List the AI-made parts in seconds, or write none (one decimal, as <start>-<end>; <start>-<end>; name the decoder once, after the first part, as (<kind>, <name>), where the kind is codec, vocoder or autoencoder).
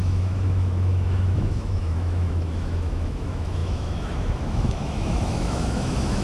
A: 0.0-6.2 (autoencoder, DAC-VAE)